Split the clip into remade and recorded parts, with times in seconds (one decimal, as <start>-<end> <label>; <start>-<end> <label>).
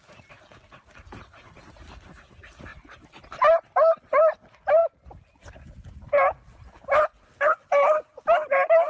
0.0-8.9 recorded